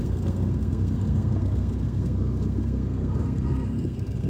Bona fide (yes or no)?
no